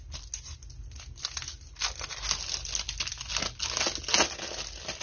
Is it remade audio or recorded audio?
recorded